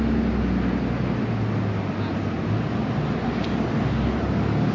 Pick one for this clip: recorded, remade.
recorded